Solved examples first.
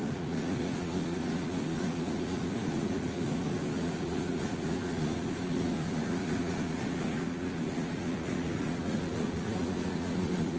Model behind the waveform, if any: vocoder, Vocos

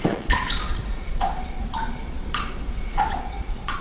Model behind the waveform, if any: vocoder, Vocos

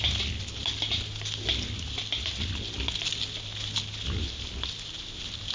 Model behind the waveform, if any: none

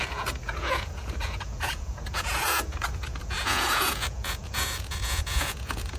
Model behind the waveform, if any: vocoder, Vocos